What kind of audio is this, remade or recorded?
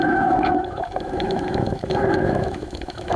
remade